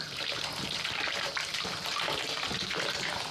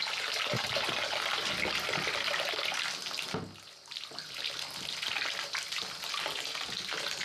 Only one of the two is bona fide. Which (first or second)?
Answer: second